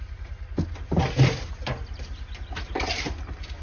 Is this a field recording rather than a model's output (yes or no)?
yes